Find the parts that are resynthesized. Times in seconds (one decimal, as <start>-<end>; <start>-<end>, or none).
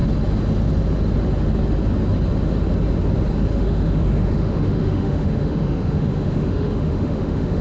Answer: 3.5-7.6